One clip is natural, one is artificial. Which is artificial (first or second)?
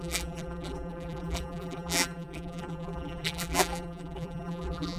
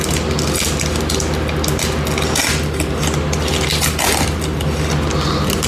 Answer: first